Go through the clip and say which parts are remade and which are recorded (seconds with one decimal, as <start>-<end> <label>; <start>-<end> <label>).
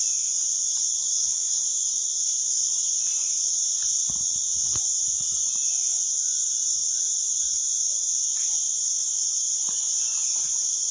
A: 0.0-10.9 recorded